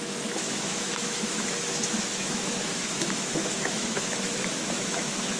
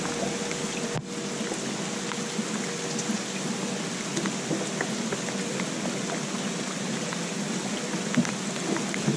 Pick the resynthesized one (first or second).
first